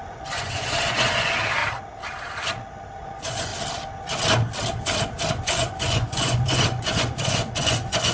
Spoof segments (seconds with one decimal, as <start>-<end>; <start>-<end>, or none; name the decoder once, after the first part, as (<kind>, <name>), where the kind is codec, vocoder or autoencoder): 0.0-1.6 (vocoder, Vocos); 3.0-3.5; 5.3-8.1